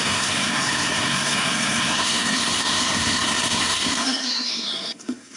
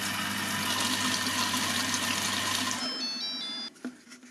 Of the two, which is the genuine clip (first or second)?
second